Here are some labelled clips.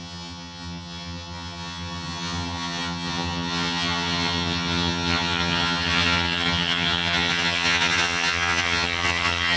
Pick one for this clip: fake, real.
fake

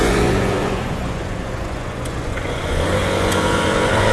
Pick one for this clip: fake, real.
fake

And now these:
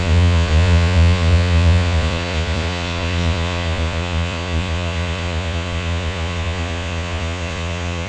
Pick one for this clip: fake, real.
fake